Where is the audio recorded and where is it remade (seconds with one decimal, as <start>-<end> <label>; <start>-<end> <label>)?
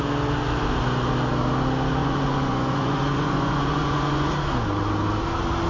0.0-2.0 recorded; 2.0-4.3 remade; 4.3-5.7 recorded